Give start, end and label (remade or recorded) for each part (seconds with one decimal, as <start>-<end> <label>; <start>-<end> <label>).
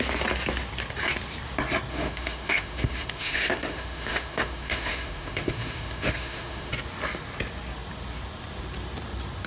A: 0.0-1.9 recorded; 1.9-6.7 remade; 6.7-9.5 recorded